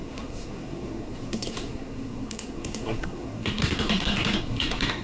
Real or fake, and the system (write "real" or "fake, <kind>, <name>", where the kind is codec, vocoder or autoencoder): fake, codec, SNAC